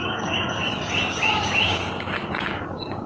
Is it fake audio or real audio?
fake